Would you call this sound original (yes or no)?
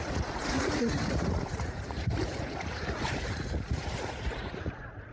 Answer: no